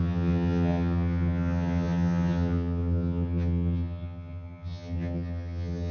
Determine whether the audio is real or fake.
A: fake